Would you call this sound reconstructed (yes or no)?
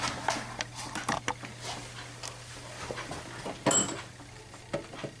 no